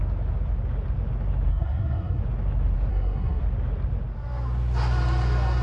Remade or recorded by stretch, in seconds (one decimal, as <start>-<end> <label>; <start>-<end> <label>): 0.0-1.5 recorded; 1.5-2.2 remade; 2.2-2.9 recorded; 2.9-3.4 remade; 3.4-5.6 recorded